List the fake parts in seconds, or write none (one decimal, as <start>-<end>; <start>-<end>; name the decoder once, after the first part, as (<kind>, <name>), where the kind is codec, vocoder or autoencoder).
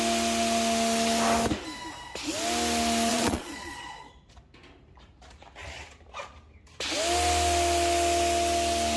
3.1-4.1 (vocoder, Vocos)